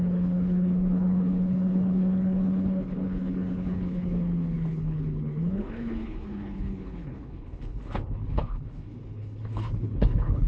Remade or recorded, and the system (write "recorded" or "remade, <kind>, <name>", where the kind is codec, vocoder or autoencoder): remade, codec, HILCodec